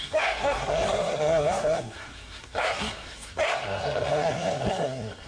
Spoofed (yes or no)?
yes